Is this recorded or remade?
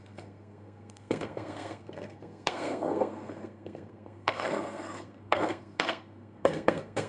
remade